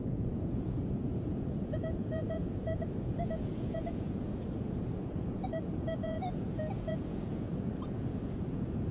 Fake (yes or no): yes